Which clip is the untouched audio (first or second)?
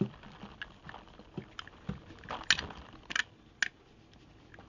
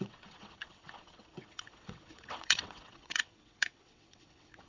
first